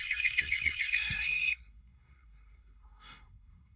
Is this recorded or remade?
remade